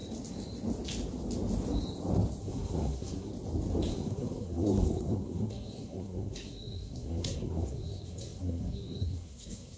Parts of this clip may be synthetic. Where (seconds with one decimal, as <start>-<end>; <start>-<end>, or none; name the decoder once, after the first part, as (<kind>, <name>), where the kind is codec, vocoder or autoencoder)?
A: 2.4-3.3 (codec, SNAC); 3.9-9.8